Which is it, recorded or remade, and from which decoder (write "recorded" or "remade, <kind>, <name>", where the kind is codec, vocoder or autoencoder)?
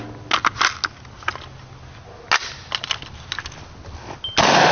recorded